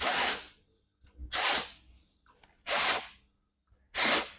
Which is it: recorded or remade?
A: recorded